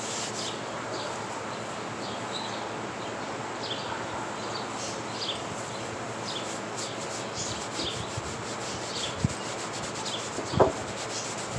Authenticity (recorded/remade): recorded